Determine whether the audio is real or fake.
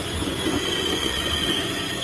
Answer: fake